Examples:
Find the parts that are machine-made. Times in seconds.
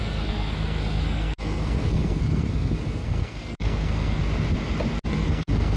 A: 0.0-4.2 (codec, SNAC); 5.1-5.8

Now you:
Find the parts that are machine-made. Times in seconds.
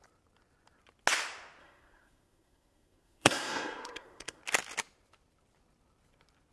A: 1.6-4.4 (codec, SNAC)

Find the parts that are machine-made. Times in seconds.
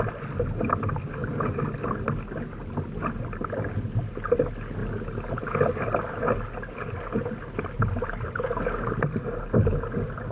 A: none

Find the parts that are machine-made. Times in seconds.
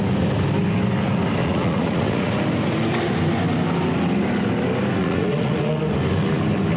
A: 1.4-2.3 (vocoder, Vocos); 5.0-5.8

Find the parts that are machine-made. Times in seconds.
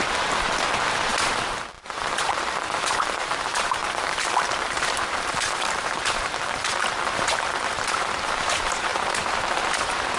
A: 0.0-10.2 (vocoder, BigVGAN v2)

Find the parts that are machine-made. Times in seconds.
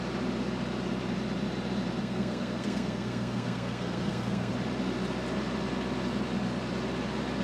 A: 2.0-4.5 (codec, SNAC)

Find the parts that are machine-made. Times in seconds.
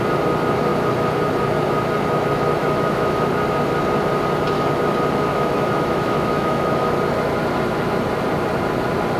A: 2.6-3.3 (autoencoder, DAC-VAE); 5.3-6.9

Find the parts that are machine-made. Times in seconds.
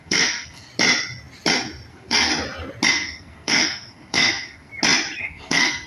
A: 0.0-0.7 (codec, SNAC); 1.9-2.3; 2.9-4.7; 5.2-5.9